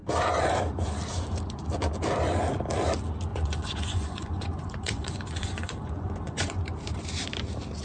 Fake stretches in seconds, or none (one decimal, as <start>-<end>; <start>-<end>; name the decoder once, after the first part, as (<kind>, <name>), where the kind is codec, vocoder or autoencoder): 3.3-6.6 (vocoder, Vocos)